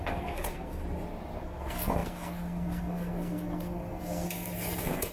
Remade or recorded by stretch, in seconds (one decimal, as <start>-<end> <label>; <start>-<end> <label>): 0.0-0.8 remade; 0.8-1.4 recorded; 1.4-5.1 remade